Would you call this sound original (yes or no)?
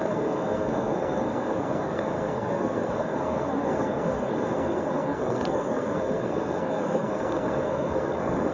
no